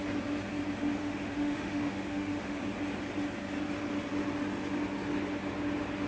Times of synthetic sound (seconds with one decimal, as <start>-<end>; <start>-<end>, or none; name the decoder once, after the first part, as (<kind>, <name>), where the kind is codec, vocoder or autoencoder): 1.0-2.6 (autoencoder, DAC-VAE)